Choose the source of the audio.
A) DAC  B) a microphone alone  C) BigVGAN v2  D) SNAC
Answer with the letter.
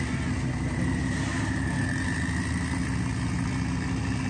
B